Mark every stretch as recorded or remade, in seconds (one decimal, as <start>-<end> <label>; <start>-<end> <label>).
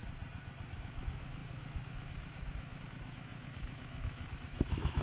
0.0-0.8 recorded; 0.8-5.0 remade